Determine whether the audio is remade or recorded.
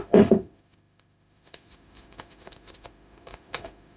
remade